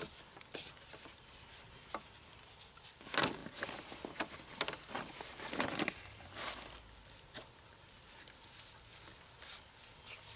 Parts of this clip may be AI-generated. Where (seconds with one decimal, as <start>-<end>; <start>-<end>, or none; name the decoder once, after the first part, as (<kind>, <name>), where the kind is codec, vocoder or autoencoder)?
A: none

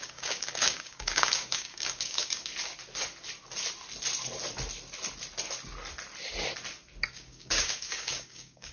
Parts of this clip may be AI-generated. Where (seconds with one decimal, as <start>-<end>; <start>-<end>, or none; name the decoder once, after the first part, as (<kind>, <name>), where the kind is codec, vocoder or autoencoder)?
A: 0.0-2.5 (codec, DAC); 7.1-8.7

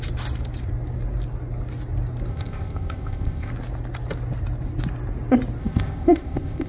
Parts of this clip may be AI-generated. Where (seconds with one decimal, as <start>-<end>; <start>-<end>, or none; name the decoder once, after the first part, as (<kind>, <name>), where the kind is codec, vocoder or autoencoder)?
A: 2.3-3.5 (codec, ZipCodec); 5.6-6.7

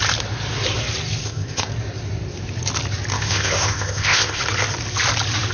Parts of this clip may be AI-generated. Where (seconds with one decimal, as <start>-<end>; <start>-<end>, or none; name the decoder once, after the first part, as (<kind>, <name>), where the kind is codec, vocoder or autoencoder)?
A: 1.2-1.7 (codec, ZipCodec); 3.1-4.4

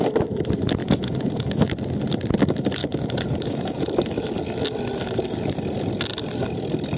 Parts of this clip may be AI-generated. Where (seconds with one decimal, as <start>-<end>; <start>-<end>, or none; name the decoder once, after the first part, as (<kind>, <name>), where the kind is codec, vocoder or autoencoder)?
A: 0.8-1.4 (vocoder, Vocos); 2.8-3.9

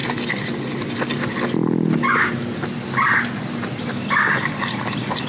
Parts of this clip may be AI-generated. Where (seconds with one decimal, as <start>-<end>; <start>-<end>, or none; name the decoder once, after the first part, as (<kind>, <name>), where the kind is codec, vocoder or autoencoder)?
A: none

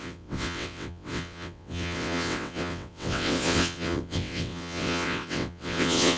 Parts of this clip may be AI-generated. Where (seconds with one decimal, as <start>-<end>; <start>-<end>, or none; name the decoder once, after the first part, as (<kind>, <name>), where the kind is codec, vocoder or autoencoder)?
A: 0.0-6.2 (vocoder, WaveNeXt)

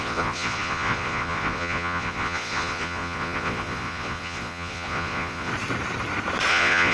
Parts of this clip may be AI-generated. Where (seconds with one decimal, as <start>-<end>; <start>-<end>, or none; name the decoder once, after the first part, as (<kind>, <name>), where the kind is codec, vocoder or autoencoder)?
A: 0.0-5.5 (vocoder, Vocos); 6.5-6.9